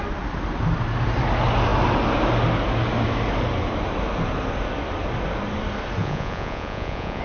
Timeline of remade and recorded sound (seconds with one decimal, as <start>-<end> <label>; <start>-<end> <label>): 0.0-6.0 recorded; 6.0-7.2 remade